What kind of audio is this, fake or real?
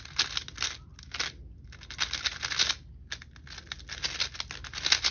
real